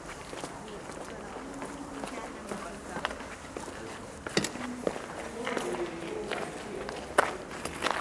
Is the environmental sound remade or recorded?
recorded